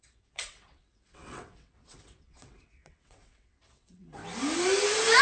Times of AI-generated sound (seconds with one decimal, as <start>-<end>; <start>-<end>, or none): 0.0-4.2